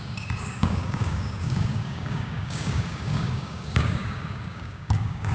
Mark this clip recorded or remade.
remade